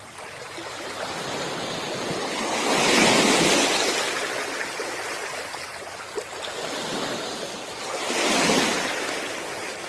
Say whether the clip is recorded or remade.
recorded